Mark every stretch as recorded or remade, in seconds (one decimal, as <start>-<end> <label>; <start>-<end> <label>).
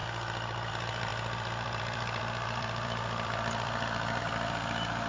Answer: 0.0-0.7 recorded; 0.7-5.1 remade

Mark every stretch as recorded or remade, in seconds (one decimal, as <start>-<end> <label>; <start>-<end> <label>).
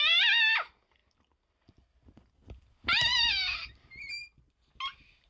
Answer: 0.0-1.0 recorded; 1.0-4.1 remade; 4.1-5.3 recorded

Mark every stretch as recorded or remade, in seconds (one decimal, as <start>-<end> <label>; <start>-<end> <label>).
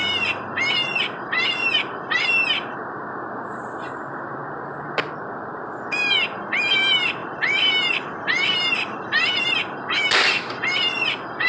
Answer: 0.0-1.0 recorded; 1.0-4.4 remade; 4.4-5.3 recorded; 5.3-11.5 remade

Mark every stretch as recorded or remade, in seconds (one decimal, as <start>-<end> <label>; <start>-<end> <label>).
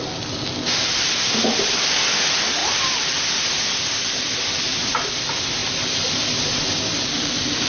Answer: 0.0-2.6 recorded; 2.6-4.0 remade; 4.0-7.7 recorded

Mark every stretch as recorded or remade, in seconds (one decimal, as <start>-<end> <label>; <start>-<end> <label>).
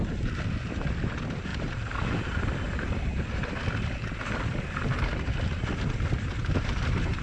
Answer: 0.0-1.5 recorded; 1.5-5.8 remade; 5.8-7.2 recorded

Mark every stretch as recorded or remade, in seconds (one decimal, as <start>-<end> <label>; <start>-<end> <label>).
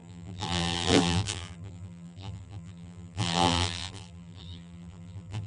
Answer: 0.0-5.5 remade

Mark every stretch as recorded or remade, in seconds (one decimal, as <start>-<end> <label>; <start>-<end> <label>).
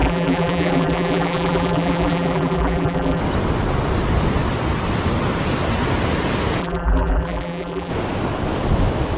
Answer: 0.0-3.2 remade; 3.2-6.6 recorded; 6.6-7.9 remade; 7.9-9.2 recorded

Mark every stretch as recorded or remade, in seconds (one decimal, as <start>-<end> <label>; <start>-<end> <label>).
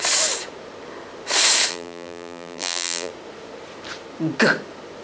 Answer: 0.0-1.7 recorded; 1.7-3.1 remade; 3.1-5.0 recorded